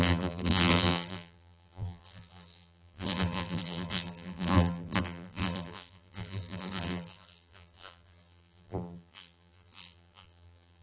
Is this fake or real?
fake